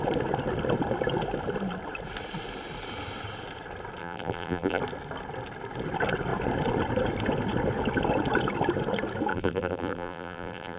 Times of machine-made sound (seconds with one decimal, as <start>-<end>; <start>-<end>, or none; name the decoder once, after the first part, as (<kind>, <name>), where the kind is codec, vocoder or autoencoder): 4.0-4.8 (vocoder, BigVGAN v2); 9.3-10.8